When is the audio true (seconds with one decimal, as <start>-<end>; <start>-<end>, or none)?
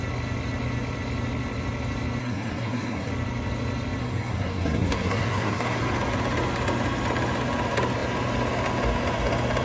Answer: 0.0-2.2; 3.1-4.0; 5.8-9.6